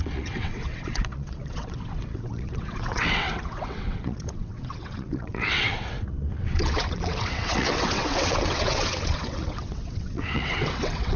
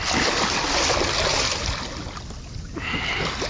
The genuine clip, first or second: second